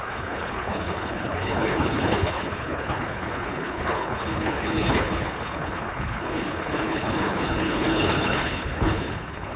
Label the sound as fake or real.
fake